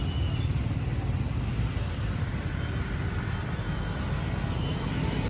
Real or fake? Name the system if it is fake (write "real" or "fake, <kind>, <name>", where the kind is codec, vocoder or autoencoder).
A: real